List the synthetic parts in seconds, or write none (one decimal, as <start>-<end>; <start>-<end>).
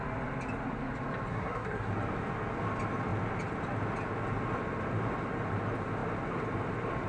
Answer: 1.3-1.9